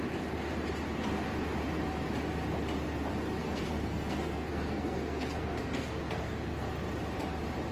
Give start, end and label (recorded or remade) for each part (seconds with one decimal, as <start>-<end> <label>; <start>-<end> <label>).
0.0-3.4 recorded; 3.4-6.7 remade; 6.7-7.7 recorded